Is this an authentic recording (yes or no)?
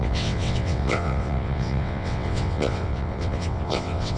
no